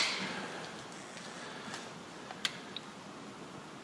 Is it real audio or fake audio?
real